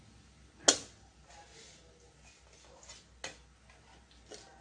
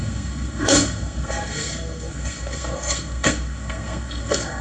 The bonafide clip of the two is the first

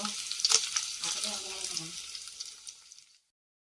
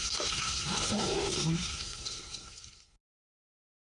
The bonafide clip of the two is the first